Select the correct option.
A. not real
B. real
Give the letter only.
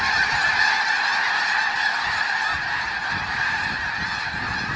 B